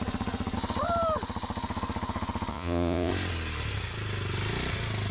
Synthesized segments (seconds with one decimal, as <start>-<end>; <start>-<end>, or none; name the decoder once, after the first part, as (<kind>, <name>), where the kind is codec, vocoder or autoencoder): 2.5-3.1 (vocoder, Vocos)